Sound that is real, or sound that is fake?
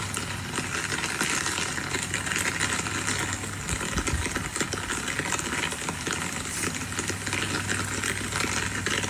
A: real